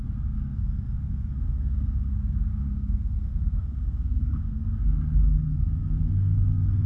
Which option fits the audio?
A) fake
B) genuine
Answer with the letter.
A